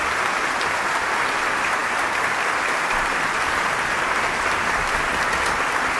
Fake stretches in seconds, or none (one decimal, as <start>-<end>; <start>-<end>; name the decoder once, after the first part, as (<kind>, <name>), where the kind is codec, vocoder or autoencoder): none